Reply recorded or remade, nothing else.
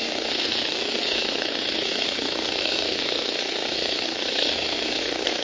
remade